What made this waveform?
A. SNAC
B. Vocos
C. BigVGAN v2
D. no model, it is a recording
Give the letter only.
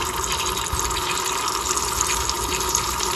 D